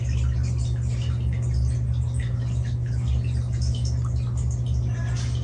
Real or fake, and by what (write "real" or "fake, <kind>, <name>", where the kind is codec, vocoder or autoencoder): real